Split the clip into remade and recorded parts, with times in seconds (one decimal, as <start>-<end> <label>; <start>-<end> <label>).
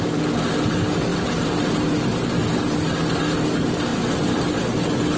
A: 0.0-5.2 recorded